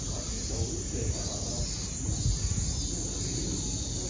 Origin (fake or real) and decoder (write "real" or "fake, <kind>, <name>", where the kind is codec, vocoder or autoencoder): real